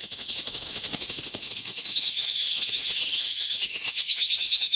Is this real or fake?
fake